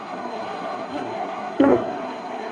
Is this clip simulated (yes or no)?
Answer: yes